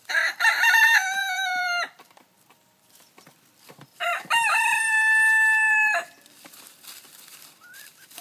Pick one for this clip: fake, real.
fake